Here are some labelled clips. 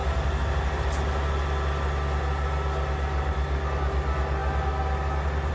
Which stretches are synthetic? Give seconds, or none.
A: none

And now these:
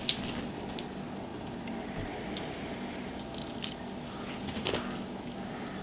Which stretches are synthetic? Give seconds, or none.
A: 1.3-4.7

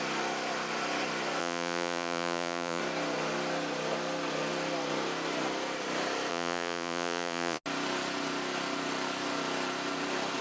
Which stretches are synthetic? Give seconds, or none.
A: 1.4-2.8; 6.3-7.6

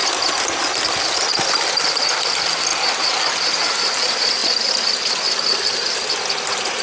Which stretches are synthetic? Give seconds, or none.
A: 0.6-2.7; 3.6-4.4

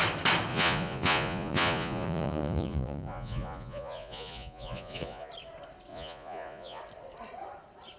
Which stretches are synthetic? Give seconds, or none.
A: 0.5-5.3; 5.9-6.8

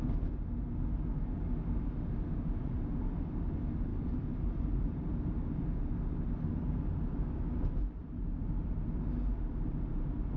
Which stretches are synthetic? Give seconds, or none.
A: 3.9-5.6; 8.0-9.0